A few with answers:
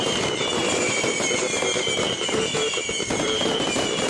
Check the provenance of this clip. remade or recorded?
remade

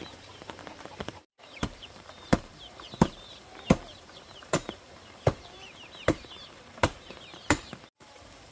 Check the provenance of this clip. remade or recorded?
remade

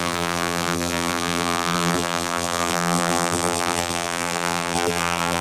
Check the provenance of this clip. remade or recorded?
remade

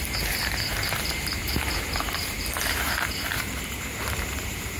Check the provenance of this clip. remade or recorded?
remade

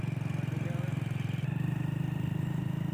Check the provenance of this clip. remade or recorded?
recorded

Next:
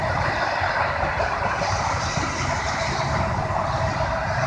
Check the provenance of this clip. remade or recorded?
recorded